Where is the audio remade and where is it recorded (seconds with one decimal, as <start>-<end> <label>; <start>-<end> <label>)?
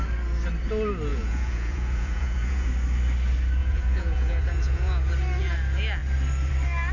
0.0-1.1 recorded; 1.1-2.7 remade; 2.7-3.6 recorded; 3.6-5.1 remade; 5.1-6.9 recorded